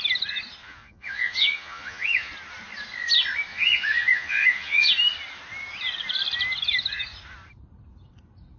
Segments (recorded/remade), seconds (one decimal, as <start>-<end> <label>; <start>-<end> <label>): 0.0-0.6 recorded; 0.6-2.3 remade; 2.3-3.5 recorded; 3.5-4.9 remade; 4.9-8.6 recorded